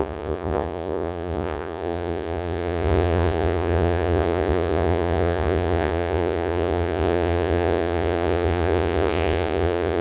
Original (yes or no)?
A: no